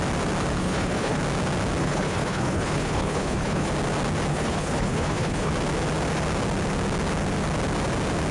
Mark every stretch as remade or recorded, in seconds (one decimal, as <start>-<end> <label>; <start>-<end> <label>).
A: 0.0-0.6 recorded; 0.6-1.2 remade; 1.2-1.8 recorded; 1.8-3.7 remade; 3.7-4.3 recorded; 4.3-5.5 remade; 5.5-8.3 recorded